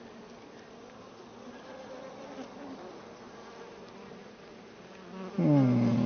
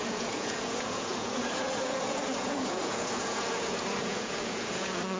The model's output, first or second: second